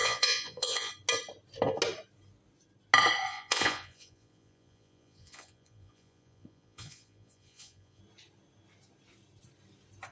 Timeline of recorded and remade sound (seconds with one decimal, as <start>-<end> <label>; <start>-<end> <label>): 0.0-0.9 remade; 0.9-3.3 recorded; 3.3-8.0 remade; 8.0-10.1 recorded